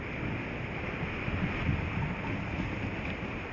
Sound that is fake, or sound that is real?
real